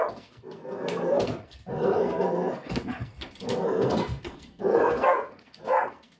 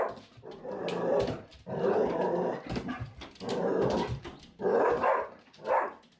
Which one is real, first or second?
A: second